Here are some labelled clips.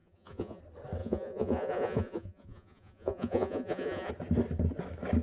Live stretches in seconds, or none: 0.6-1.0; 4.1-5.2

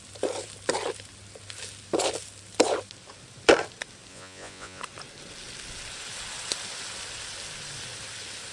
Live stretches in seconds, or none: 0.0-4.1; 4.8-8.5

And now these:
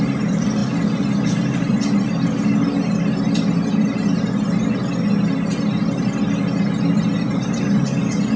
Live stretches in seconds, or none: 0.0-8.4